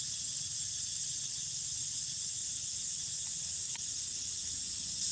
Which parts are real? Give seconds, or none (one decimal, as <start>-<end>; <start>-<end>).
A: 0.0-5.1